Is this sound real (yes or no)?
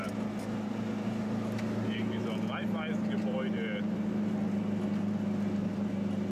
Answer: yes